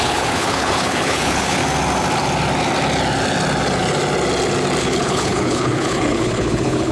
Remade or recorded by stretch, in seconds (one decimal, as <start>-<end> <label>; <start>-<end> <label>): 0.0-1.6 remade; 1.6-4.8 recorded; 4.8-6.9 remade